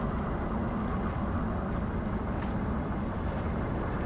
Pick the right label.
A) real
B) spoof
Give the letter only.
A